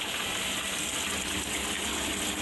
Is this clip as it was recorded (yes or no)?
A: yes